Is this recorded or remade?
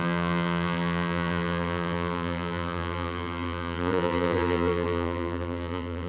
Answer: remade